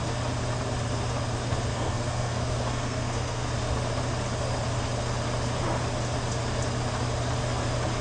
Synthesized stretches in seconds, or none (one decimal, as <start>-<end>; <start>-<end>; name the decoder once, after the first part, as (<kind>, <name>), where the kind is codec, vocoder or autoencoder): 1.7-3.5 (codec, SNAC)